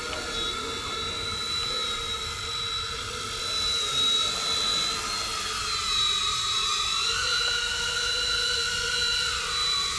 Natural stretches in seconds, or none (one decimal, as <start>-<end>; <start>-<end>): 0.0-10.0